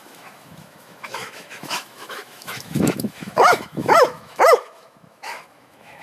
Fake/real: fake